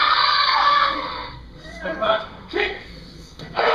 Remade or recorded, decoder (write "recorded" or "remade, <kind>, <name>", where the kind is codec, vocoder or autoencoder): remade, codec, SNAC